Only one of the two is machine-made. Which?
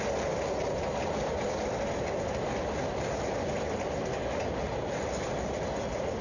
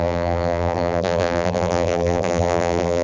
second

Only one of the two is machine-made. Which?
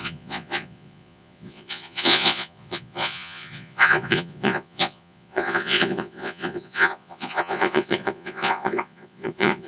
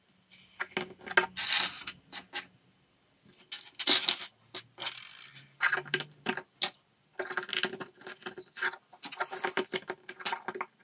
first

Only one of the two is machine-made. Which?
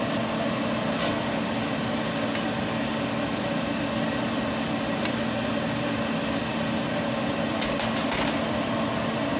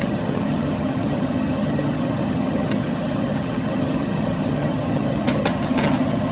second